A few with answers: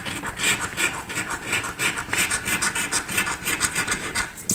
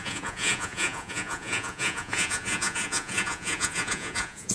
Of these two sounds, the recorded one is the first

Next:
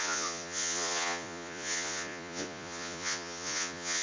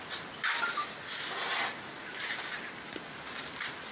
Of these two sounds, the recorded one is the second